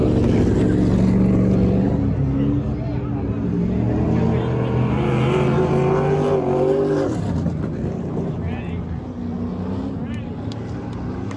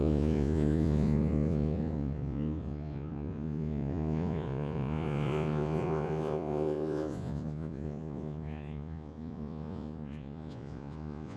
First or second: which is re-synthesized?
second